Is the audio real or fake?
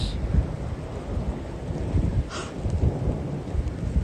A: real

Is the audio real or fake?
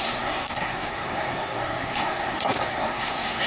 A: fake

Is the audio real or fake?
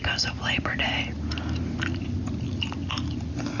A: real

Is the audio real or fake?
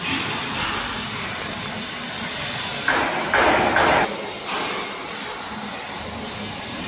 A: real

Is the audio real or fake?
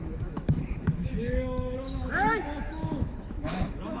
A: fake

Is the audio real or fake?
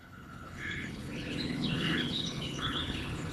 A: fake